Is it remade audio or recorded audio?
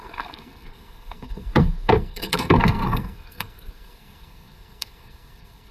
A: remade